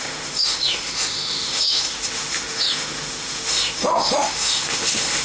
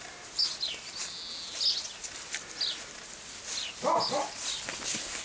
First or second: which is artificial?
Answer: first